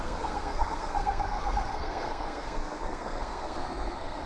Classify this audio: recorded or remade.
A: remade